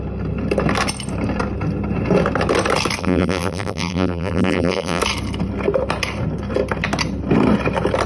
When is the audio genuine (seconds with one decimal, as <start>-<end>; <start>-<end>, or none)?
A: 0.0-3.0; 5.0-8.1